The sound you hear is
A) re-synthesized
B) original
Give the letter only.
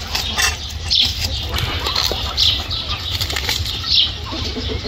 A